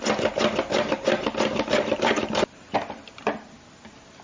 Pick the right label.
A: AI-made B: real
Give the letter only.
B